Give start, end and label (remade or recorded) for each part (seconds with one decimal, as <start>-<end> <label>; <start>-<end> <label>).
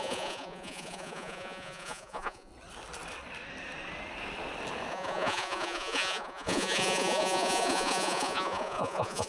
0.0-2.5 remade; 2.5-4.9 recorded; 4.9-9.3 remade